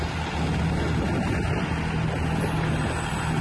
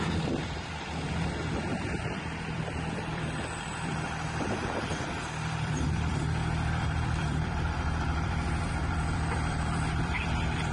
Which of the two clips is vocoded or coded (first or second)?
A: second